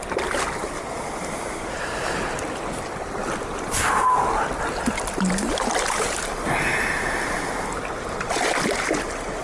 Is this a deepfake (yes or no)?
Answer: no